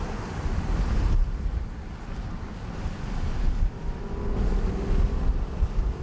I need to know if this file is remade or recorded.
recorded